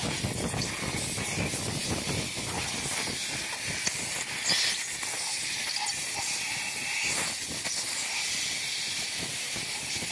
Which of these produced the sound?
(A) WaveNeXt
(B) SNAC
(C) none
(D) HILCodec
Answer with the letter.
C